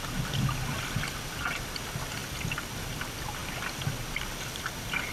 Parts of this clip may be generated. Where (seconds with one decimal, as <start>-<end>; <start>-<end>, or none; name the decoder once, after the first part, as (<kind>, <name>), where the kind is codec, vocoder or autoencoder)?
none